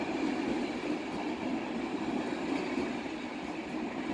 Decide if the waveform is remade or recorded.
recorded